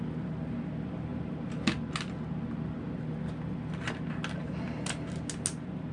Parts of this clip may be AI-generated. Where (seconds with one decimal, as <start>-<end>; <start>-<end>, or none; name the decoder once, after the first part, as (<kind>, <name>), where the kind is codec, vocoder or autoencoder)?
none